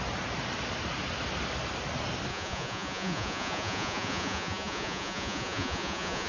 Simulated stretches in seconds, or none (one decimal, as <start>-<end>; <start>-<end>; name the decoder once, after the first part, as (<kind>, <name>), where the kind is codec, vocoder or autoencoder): 2.3-6.3 (vocoder, Vocos)